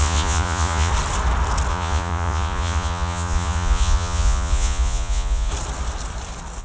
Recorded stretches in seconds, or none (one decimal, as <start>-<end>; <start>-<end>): 0.9-1.7; 5.5-6.6